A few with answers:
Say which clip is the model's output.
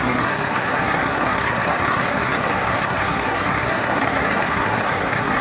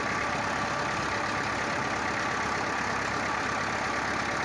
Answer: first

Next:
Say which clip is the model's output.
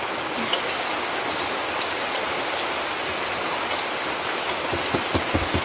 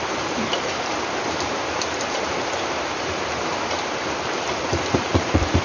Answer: second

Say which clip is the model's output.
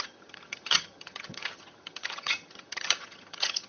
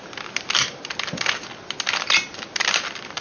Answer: first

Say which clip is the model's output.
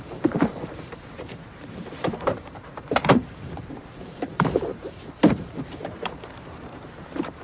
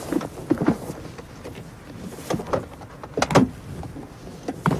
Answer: first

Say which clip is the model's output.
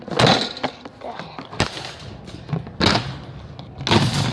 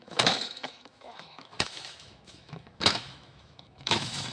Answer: second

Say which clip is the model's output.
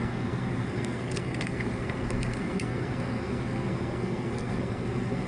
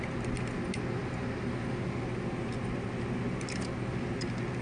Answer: first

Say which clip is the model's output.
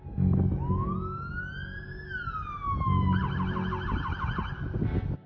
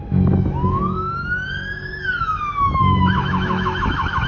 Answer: second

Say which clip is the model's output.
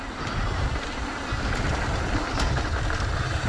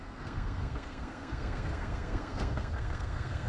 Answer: second